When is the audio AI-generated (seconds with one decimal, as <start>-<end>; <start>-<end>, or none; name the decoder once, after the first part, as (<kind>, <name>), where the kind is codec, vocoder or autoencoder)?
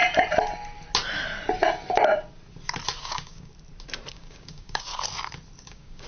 3.0-3.5 (codec, DAC); 4.1-4.9; 5.6-6.1